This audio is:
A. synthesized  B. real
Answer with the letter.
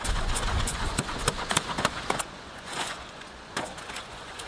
A